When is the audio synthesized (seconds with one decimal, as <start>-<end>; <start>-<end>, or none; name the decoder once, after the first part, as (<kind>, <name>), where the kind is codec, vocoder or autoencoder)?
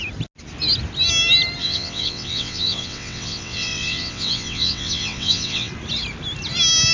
1.6-5.7 (vocoder, WaveNeXt)